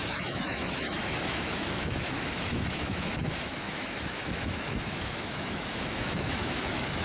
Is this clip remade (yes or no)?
yes